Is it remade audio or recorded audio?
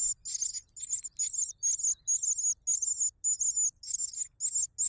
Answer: recorded